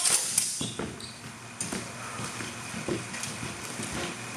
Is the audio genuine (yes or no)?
yes